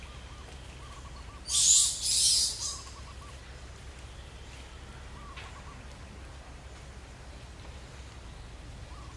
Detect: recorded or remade recorded